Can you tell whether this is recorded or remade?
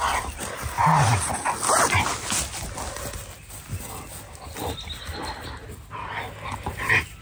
recorded